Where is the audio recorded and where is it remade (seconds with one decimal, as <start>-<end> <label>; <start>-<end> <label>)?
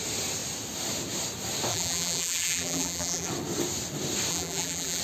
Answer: 0.0-1.7 recorded; 1.7-3.3 remade; 3.3-4.3 recorded; 4.3-5.0 remade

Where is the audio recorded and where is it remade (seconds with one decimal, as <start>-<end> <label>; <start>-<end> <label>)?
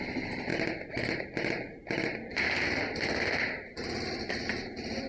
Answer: 0.0-5.1 recorded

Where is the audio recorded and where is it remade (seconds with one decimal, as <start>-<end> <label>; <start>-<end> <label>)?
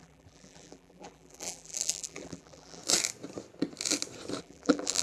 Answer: 0.0-2.8 remade; 2.8-4.4 recorded; 4.4-5.0 remade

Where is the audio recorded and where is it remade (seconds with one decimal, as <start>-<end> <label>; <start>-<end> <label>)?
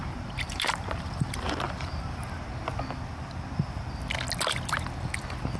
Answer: 0.0-2.4 remade; 2.4-5.6 recorded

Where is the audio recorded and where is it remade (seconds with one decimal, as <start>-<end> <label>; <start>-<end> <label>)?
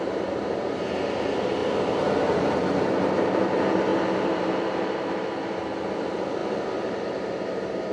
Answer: 0.0-6.4 remade; 6.4-7.0 recorded; 7.0-7.9 remade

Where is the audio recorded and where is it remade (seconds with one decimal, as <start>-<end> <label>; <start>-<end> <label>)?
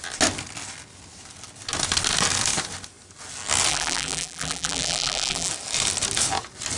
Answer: 0.0-3.7 recorded; 3.7-5.5 remade; 5.5-6.8 recorded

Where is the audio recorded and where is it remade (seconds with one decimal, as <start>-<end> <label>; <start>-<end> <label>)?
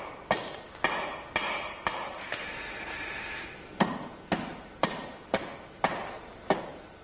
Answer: 0.0-2.4 recorded; 2.4-3.8 remade; 3.8-4.5 recorded; 4.5-6.4 remade; 6.4-7.0 recorded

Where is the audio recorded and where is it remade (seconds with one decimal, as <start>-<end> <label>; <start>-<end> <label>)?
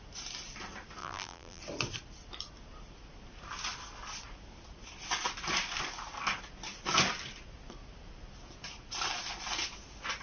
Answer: 0.0-1.0 recorded; 1.0-1.6 remade; 1.6-10.2 recorded